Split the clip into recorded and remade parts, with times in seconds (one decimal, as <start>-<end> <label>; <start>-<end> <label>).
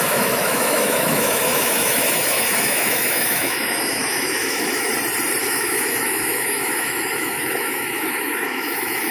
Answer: 0.0-4.9 remade; 4.9-5.4 recorded; 5.4-9.1 remade